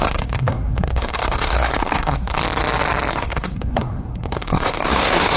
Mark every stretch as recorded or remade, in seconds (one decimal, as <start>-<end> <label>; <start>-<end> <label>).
0.0-2.4 remade; 2.4-3.1 recorded; 3.1-5.4 remade